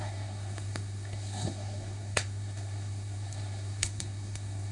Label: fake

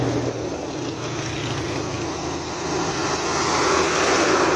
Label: real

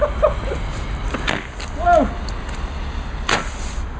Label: real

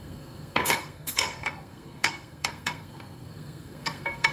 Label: fake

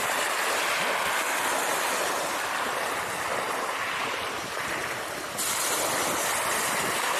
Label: real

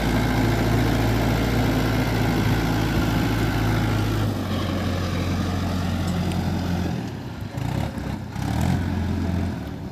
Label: real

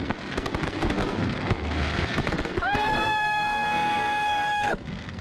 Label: fake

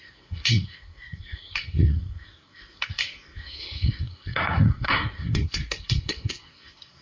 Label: fake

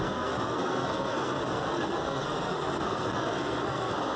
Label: fake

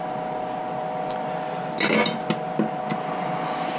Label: real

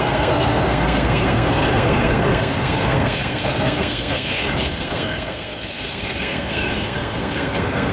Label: fake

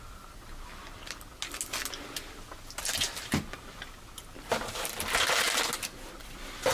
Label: real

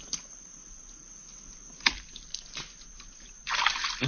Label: real